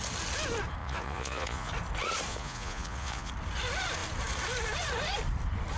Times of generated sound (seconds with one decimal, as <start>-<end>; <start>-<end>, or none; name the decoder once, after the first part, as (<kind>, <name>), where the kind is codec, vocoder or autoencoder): 0.8-1.7 (vocoder, Vocos); 2.3-3.3